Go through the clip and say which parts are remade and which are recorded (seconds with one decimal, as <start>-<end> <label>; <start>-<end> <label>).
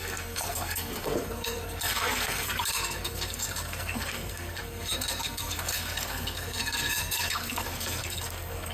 0.0-8.7 remade